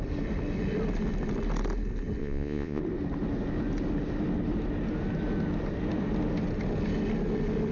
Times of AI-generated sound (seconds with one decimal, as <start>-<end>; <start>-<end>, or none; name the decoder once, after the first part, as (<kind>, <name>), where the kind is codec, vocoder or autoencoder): 2.2-2.8 (vocoder, Vocos)